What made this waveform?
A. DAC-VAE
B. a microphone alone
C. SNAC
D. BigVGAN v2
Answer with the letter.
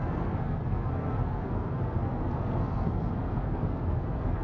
C